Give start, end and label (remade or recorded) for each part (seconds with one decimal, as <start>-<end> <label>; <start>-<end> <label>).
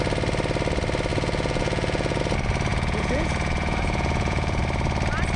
0.0-1.1 recorded; 1.1-2.2 remade; 2.2-2.7 recorded; 2.7-4.6 remade; 4.6-5.4 recorded